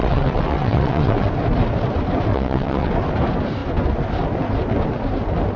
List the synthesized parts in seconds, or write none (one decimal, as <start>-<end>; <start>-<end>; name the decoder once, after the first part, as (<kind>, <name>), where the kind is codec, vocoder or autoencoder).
0.0-1.3 (vocoder, WaveNeXt); 2.3-2.9